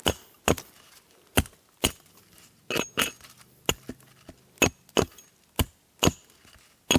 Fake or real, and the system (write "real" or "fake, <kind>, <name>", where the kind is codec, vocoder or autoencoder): real